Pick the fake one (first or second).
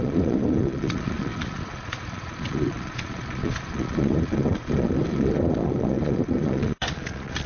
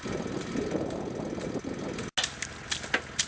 first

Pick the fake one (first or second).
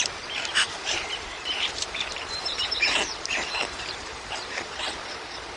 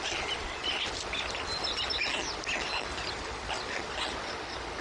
first